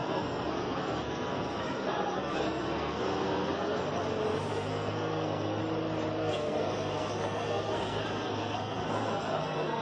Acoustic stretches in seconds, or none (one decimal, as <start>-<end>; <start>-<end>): 3.8-4.5; 5.6-6.2